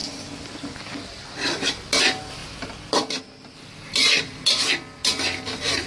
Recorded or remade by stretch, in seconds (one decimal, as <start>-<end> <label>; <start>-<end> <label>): 0.0-5.9 recorded